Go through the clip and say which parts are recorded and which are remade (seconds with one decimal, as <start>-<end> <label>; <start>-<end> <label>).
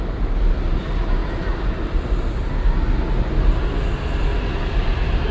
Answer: 0.0-5.3 recorded